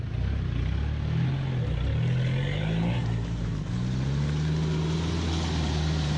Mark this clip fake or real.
real